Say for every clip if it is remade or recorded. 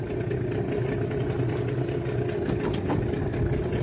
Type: recorded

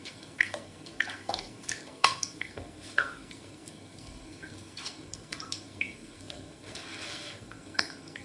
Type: remade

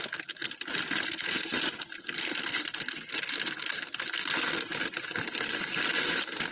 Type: recorded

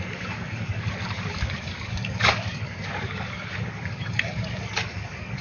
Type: remade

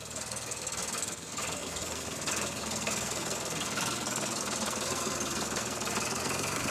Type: remade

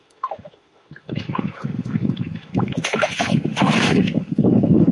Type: remade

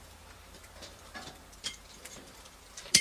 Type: remade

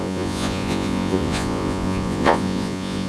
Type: remade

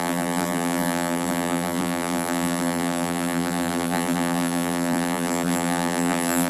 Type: remade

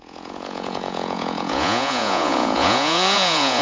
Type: remade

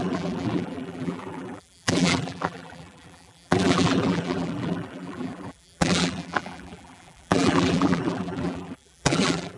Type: remade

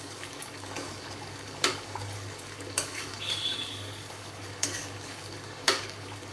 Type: remade